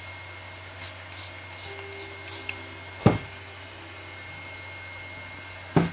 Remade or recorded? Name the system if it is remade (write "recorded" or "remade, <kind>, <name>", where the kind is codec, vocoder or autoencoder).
recorded